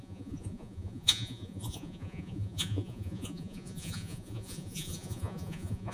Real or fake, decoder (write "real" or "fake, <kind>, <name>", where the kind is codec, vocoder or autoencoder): fake, vocoder, Vocos